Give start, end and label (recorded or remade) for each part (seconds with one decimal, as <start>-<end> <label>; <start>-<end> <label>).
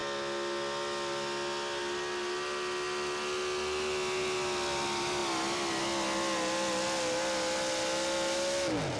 0.0-9.0 recorded